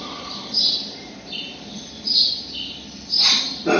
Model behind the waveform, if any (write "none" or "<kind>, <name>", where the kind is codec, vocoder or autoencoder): none